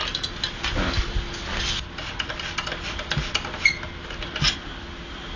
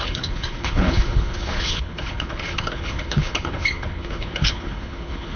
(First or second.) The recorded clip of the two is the first